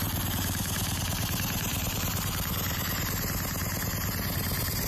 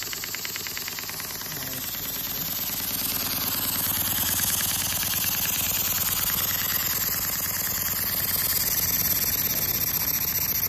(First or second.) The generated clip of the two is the first